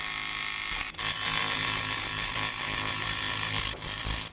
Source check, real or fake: real